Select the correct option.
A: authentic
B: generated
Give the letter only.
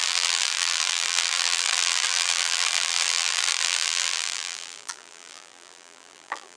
B